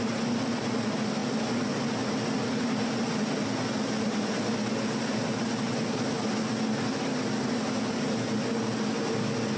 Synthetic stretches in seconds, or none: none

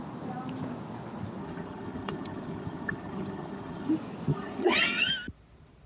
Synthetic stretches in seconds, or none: 1.4-3.9 (vocoder, HiFi-GAN); 4.3-5.1

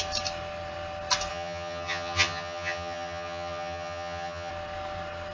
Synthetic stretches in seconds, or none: 1.3-4.5 (vocoder, HiFi-GAN)